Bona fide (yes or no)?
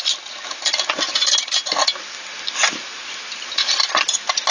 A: yes